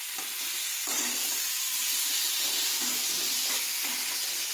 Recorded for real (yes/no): yes